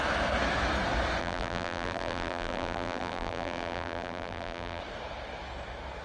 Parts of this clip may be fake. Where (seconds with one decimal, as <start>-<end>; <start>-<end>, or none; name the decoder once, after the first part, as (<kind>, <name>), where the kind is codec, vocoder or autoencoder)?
1.2-4.8 (vocoder, BigVGAN v2)

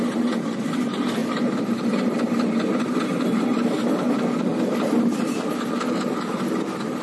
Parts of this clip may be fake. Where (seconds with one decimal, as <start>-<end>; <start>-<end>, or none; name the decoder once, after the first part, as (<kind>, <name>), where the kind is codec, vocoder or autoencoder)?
none

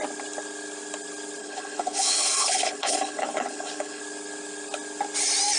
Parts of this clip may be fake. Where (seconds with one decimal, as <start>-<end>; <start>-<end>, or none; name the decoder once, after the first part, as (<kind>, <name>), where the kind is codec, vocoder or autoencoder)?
1.4-4.0 (codec, HILCodec)

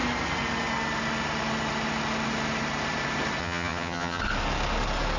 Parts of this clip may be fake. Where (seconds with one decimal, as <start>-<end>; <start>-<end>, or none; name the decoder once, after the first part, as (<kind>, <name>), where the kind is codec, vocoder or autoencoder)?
3.4-4.2 (vocoder, HiFi-GAN)

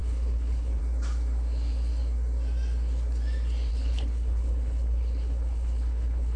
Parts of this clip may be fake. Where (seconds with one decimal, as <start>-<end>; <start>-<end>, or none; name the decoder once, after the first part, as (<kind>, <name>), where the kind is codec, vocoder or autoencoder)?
0.0-0.8 (codec, HILCodec); 3.7-6.4

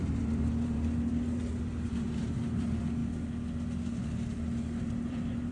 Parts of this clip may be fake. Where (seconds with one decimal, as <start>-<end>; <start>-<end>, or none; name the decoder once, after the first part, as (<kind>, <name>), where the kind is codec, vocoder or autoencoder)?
0.0-3.0 (vocoder, BigVGAN v2); 5.1-5.5

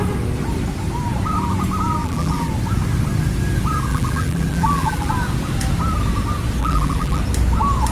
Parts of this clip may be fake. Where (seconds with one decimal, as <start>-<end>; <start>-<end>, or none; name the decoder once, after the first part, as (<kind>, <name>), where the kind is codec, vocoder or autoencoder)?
2.0-2.5 (vocoder, BigVGAN v2); 3.9-5.1; 6.6-7.2

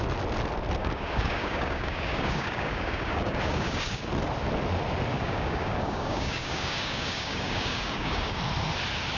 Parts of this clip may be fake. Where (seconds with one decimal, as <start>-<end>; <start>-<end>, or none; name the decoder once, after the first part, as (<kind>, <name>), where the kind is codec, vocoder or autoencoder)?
0.8-4.1 (codec, DAC); 5.1-8.4